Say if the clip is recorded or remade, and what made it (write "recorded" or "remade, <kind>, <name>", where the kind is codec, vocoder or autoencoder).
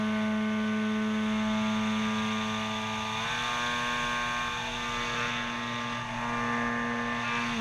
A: recorded